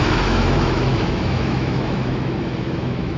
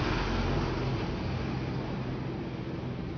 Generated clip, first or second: first